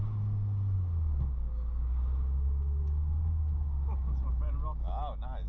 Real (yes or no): yes